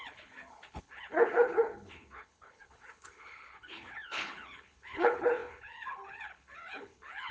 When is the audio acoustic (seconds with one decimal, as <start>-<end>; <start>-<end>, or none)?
none